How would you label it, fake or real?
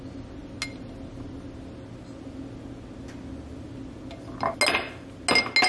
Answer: real